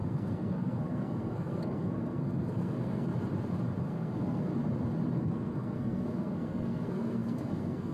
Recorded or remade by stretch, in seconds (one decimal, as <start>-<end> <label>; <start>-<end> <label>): 0.0-3.1 remade; 3.1-3.8 recorded; 3.8-4.5 remade; 4.5-5.2 recorded; 5.2-7.9 remade